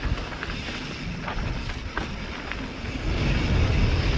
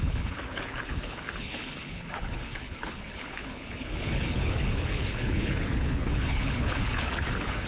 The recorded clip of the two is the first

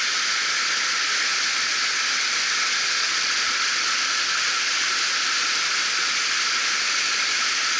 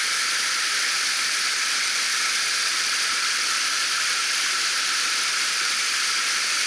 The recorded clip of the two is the first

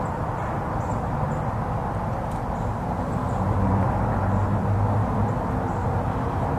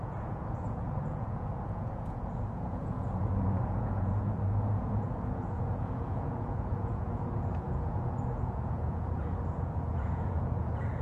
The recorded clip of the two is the first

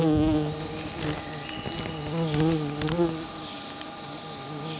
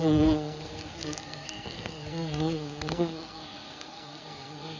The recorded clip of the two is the first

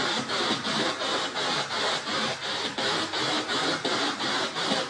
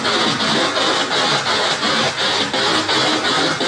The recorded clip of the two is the second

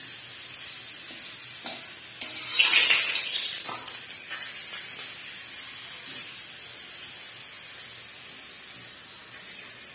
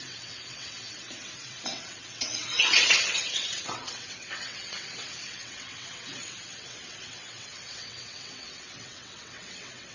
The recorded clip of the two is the first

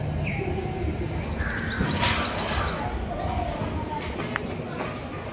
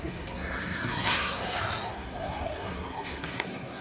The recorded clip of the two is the first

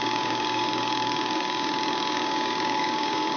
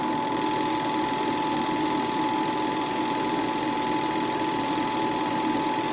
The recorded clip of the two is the second